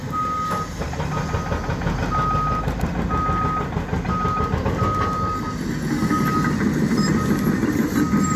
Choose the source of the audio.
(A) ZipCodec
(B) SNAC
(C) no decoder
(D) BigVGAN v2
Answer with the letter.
C